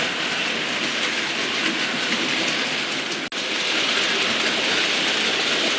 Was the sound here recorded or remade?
recorded